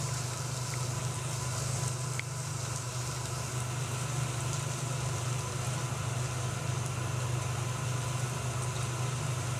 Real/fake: real